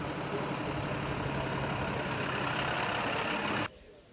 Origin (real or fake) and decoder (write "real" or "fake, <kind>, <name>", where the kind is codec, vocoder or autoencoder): real